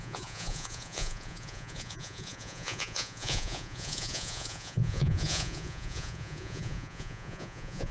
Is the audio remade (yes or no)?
yes